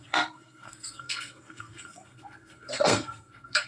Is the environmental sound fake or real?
fake